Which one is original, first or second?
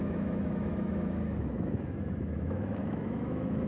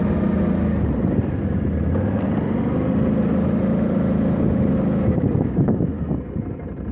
second